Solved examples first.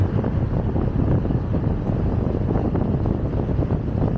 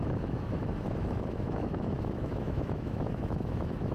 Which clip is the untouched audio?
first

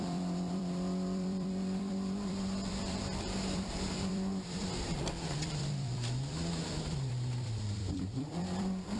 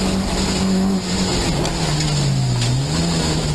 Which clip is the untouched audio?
second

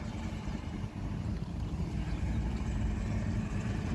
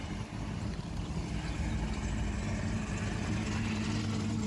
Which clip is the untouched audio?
second